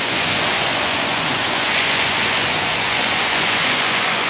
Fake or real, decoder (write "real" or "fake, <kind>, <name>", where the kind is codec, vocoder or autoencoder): fake, vocoder, Vocos